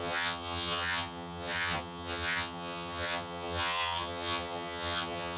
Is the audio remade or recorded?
remade